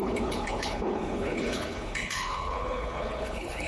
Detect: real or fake fake